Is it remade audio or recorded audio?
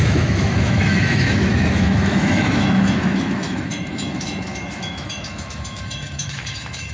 remade